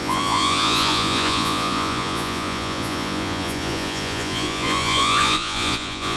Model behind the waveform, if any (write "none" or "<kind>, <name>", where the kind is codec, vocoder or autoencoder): vocoder, Vocos